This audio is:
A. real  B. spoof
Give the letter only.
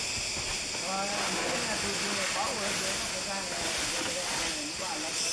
A